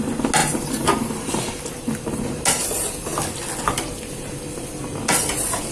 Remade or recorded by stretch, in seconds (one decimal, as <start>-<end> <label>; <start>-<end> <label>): 0.0-5.7 recorded